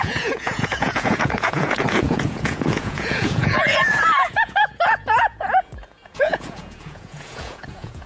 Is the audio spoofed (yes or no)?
yes